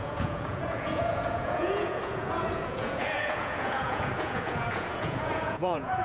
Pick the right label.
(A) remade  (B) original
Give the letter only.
A